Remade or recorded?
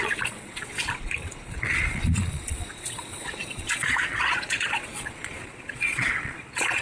remade